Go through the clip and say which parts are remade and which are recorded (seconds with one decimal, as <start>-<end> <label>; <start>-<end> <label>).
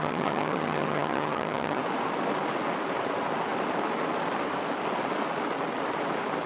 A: 0.0-1.8 remade; 1.8-6.5 recorded